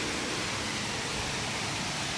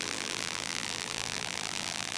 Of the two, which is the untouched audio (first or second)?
first